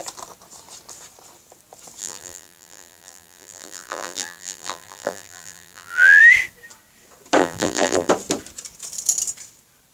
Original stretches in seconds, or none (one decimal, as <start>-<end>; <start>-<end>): 0.0-2.0; 6.2-7.4; 8.1-9.9